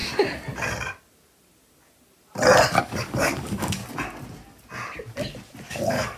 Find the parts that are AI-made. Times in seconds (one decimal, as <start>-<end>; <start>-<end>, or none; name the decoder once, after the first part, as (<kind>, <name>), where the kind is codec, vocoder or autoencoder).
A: 2.8-3.8 (codec, DAC); 5.7-6.2